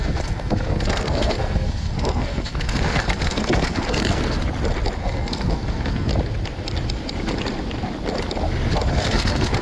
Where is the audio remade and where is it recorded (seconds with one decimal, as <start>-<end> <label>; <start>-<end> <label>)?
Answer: 0.0-4.4 remade; 4.4-5.0 recorded; 5.0-6.1 remade; 6.1-8.9 recorded; 8.9-9.6 remade